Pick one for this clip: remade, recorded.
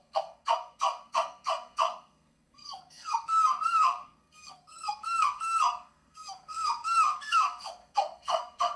remade